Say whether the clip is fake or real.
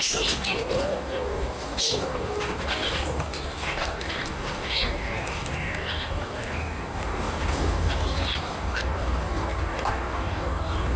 fake